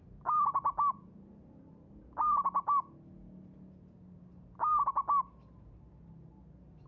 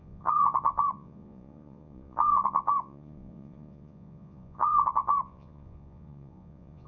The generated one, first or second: second